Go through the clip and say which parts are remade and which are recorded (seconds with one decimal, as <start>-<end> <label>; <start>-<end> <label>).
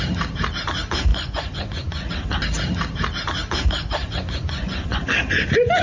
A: 0.0-1.1 recorded; 1.1-2.1 remade; 2.1-4.0 recorded; 4.0-5.0 remade; 5.0-5.8 recorded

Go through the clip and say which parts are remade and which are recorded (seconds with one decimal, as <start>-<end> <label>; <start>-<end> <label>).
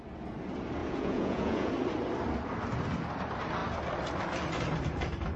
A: 0.0-0.8 recorded; 0.8-1.7 remade; 1.7-5.4 recorded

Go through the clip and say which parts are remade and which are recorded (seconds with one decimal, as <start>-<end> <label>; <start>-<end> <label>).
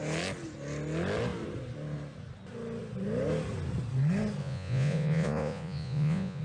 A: 0.0-4.4 recorded; 4.4-6.4 remade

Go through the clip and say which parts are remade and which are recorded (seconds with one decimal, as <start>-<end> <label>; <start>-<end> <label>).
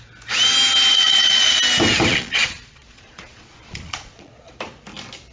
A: 0.0-0.9 recorded; 0.9-1.6 remade; 1.6-2.1 recorded; 2.1-4.5 remade; 4.5-5.3 recorded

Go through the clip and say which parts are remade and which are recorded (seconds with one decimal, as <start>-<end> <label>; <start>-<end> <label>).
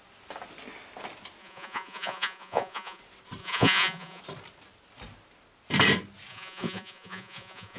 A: 0.0-1.4 recorded; 1.4-3.0 remade; 3.0-3.4 recorded; 3.4-4.2 remade; 4.2-6.3 recorded; 6.3-7.8 remade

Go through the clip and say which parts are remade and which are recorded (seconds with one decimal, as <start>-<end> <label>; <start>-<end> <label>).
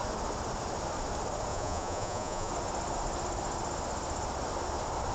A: 0.0-1.5 recorded; 1.5-2.5 remade; 2.5-5.1 recorded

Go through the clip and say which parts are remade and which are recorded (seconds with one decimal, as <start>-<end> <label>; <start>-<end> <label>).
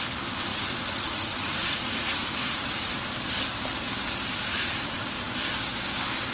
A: 0.0-0.5 recorded; 0.5-2.9 remade; 2.9-4.5 recorded; 4.5-5.0 remade; 5.0-6.3 recorded